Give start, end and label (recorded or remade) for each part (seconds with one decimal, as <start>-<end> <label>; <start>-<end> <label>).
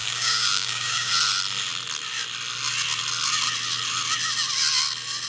0.0-1.1 remade; 1.1-5.3 recorded